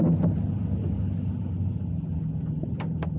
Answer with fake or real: real